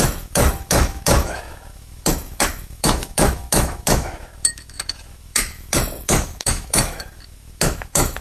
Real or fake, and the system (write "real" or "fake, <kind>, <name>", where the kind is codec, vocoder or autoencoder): fake, autoencoder, DAC-VAE